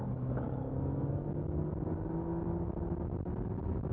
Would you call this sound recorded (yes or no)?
yes